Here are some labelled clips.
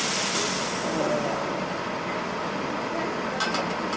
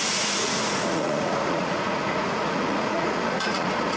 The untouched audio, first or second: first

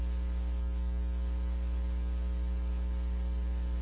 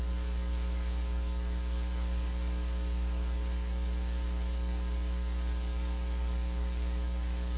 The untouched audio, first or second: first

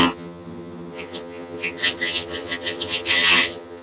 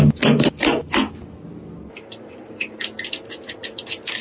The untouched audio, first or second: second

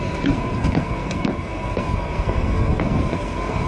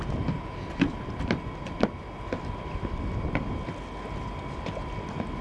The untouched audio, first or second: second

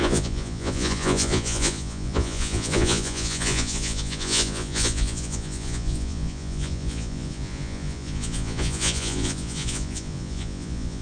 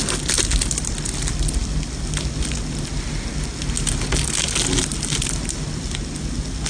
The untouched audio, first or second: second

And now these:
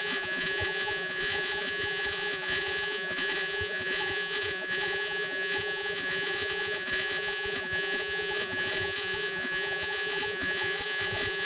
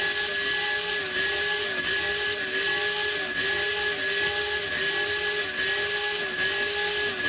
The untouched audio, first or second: second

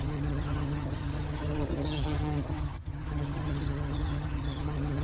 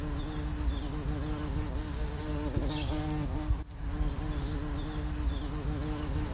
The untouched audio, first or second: second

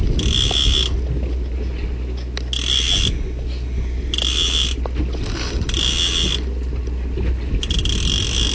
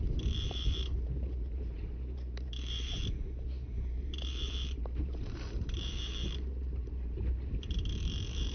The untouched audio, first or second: first